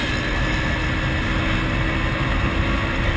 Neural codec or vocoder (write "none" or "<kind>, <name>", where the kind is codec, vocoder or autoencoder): none